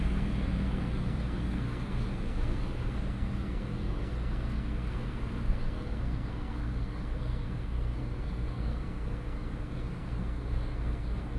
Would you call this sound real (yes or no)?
no